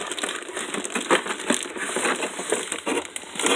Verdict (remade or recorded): recorded